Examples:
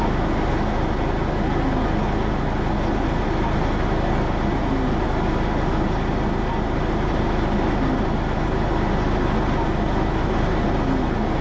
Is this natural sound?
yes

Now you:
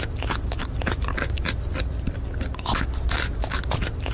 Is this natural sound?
yes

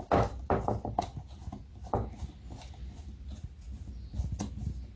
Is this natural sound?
yes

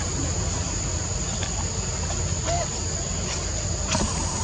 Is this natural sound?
yes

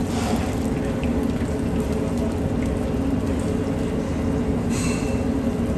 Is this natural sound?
yes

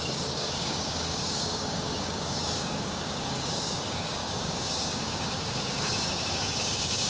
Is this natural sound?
no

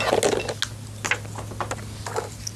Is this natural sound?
yes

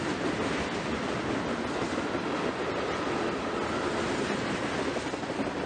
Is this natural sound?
yes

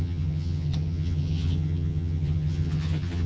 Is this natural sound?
no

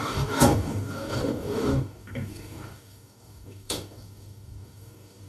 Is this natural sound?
no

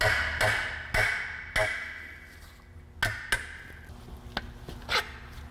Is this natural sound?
yes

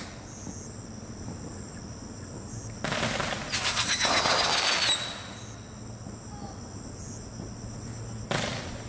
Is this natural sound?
yes